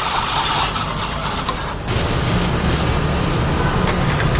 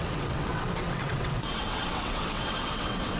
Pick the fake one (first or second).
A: second